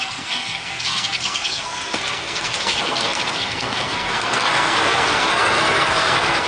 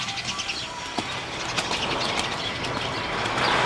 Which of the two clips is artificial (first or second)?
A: first